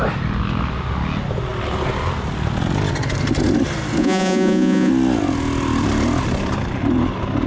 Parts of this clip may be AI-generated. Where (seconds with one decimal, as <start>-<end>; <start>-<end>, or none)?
4.0-4.9